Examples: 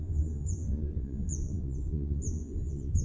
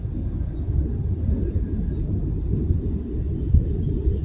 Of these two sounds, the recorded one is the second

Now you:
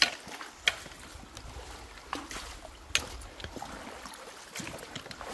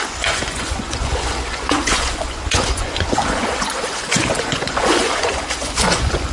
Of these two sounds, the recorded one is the first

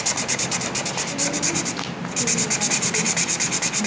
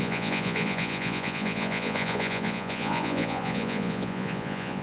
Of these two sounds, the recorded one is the first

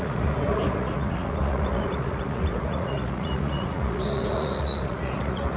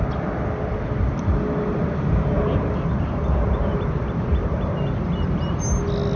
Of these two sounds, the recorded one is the second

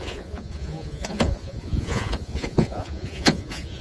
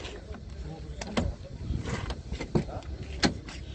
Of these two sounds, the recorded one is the second